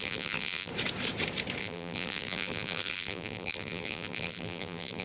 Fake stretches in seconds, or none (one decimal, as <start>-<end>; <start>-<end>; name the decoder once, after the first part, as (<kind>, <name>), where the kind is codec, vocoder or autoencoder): 0.0-0.7 (vocoder, BigVGAN v2); 1.6-5.0